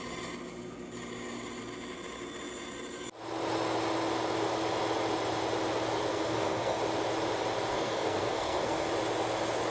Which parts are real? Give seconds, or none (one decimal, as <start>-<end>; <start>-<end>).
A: 0.0-6.1; 6.8-7.7; 8.9-9.7